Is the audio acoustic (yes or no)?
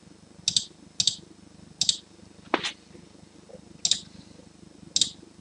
yes